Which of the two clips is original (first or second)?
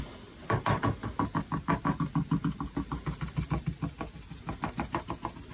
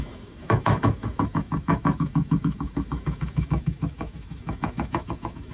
first